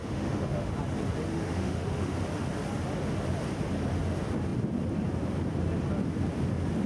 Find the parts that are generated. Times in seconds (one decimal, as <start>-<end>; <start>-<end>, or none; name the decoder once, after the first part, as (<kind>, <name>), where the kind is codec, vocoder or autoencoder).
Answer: 0.0-0.7 (autoencoder, DAC-VAE); 1.3-2.2